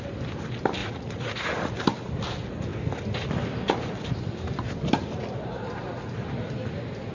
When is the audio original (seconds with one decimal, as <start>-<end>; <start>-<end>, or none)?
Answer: 0.0-0.8; 1.7-7.1